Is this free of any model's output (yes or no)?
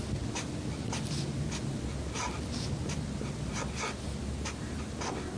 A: yes